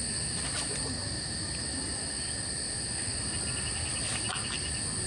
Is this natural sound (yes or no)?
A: yes